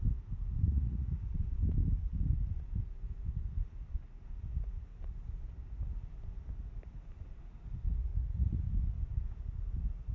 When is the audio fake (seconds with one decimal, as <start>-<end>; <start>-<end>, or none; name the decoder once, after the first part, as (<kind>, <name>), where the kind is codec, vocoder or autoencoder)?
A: 0.7-1.3 (vocoder, Vocos); 8.1-8.7